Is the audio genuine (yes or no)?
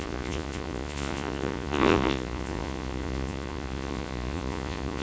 no